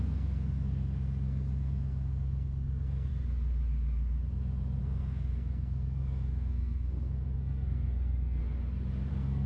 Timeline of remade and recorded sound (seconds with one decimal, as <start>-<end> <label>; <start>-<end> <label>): 0.0-3.1 remade; 3.1-4.8 recorded; 4.8-8.4 remade; 8.4-9.1 recorded; 9.1-9.5 remade